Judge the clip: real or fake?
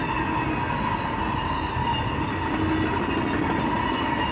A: real